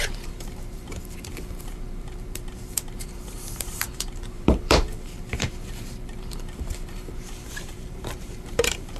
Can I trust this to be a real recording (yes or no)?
no